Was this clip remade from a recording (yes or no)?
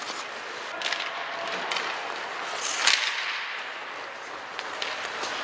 no